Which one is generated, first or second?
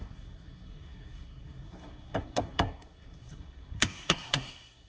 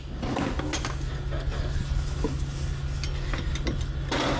first